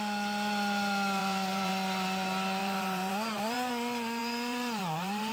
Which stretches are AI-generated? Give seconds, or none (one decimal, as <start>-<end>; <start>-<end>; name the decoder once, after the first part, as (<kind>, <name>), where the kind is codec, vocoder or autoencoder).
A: 1.2-1.7 (vocoder, BigVGAN v2); 2.6-3.7; 4.2-5.3